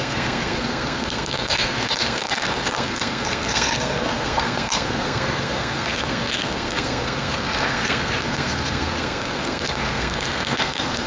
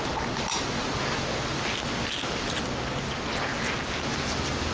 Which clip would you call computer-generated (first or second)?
first